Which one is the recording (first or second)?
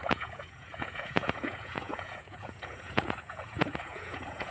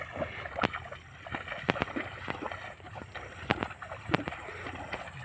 second